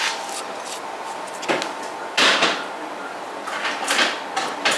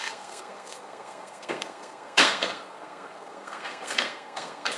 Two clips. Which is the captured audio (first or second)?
first